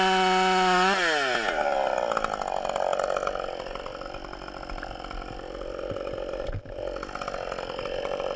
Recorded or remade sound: recorded